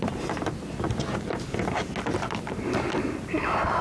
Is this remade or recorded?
recorded